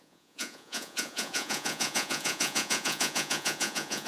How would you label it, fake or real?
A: fake